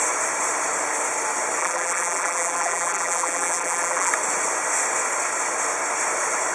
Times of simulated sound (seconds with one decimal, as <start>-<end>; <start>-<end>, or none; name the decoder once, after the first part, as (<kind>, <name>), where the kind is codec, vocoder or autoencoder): 1.6-4.1 (vocoder, BigVGAN v2)